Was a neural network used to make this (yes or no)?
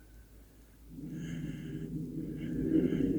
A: no